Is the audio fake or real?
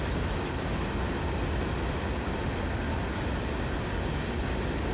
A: real